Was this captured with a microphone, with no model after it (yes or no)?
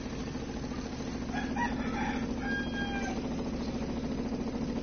yes